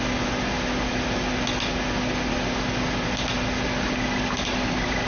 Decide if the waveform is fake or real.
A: real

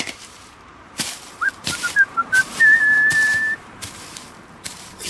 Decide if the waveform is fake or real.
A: fake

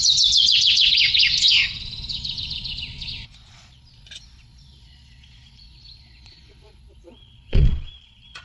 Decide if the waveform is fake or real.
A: fake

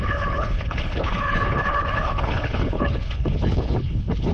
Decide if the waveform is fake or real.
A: fake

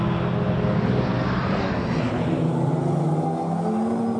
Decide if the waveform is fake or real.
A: real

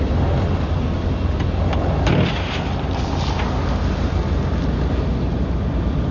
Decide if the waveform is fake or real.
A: real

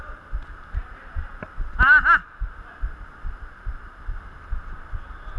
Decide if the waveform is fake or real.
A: real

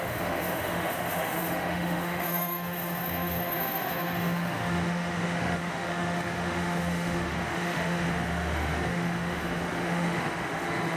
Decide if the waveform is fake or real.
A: fake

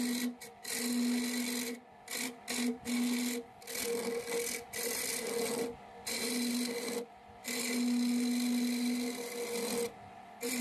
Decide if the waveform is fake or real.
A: real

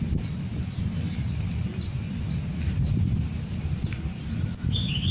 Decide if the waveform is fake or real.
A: real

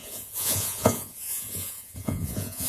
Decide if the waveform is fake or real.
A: fake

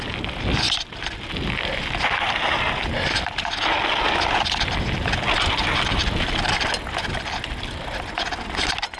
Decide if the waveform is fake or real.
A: real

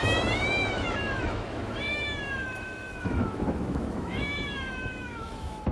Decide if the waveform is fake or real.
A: fake